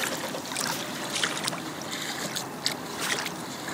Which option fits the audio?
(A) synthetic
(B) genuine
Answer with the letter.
A